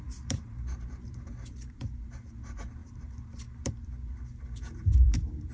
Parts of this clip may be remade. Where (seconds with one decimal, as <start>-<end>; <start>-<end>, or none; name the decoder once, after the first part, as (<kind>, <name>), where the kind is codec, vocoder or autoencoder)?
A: 0.0-5.5 (vocoder, BigVGAN v2)